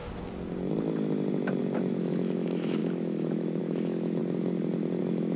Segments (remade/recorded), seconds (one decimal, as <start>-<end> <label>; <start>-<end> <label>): 0.0-1.6 recorded; 1.6-4.2 remade; 4.2-5.0 recorded; 5.0-5.4 remade